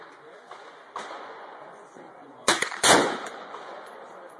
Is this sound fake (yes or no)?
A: yes